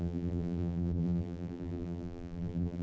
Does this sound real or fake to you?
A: fake